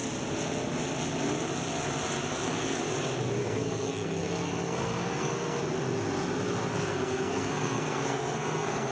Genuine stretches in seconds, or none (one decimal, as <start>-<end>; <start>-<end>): 0.0-2.3; 2.8-3.4; 5.6-6.7